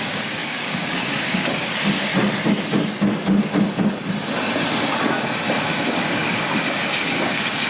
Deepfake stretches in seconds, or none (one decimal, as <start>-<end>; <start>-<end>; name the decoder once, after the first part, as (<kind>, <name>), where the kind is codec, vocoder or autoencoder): 0.0-2.1 (codec, DAC); 5.6-7.7